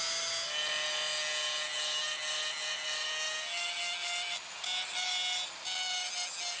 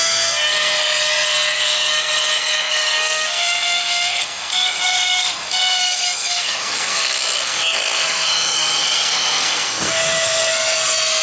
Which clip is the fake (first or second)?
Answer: second